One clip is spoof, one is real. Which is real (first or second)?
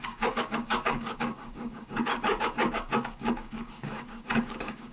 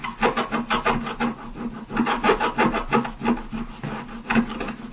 second